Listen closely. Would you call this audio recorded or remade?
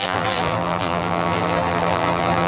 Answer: remade